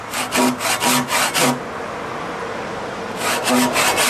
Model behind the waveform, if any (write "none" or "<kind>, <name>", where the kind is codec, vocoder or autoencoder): none